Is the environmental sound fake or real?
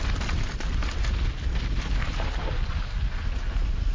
real